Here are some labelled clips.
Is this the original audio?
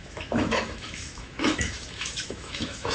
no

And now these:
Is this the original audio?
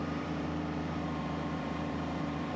no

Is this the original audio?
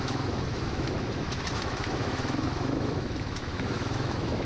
no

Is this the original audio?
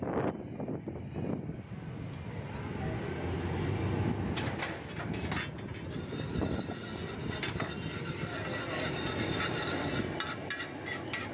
yes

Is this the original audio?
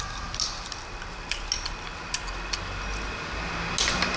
yes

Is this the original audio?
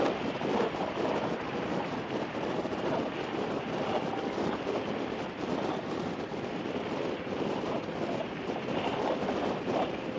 yes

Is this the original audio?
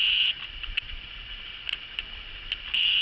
yes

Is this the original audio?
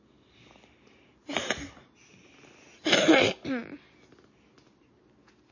yes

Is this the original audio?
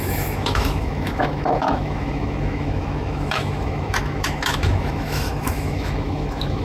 no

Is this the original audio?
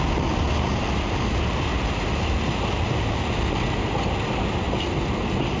yes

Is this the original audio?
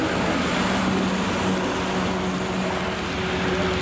yes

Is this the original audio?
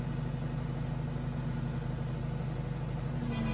yes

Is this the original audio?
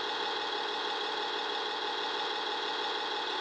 yes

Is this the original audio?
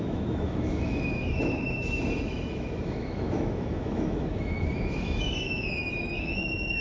no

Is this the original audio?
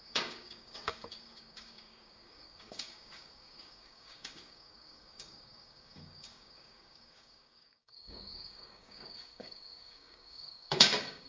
no